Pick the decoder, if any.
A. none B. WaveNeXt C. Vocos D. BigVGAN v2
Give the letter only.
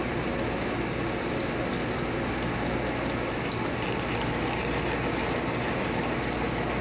A